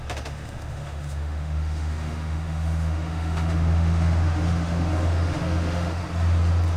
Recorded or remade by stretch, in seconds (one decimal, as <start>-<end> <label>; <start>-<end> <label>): 0.0-6.0 remade; 6.0-6.8 recorded